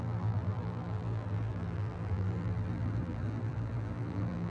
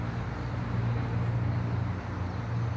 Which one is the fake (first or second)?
first